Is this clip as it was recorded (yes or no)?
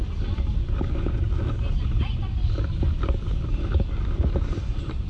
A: yes